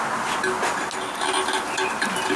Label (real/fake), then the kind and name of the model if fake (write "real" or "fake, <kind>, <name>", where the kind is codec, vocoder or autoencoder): real